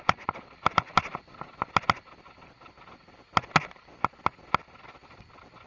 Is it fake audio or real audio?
real